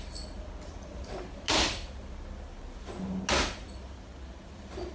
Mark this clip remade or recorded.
recorded